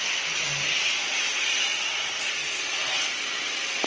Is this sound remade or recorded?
recorded